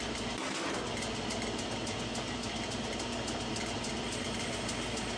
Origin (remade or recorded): recorded